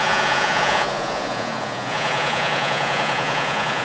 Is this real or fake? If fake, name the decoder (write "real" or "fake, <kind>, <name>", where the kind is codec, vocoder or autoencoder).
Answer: fake, vocoder, Vocos